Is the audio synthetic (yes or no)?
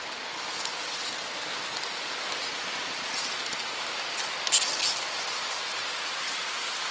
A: no